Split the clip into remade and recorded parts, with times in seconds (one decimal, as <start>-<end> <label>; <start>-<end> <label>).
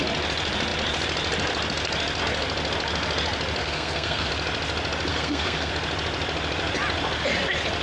0.0-3.6 recorded; 3.6-4.3 remade; 4.3-5.1 recorded; 5.1-5.7 remade; 5.7-7.8 recorded